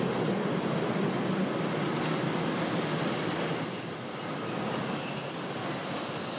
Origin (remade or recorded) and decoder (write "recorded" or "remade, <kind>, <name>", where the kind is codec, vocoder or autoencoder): recorded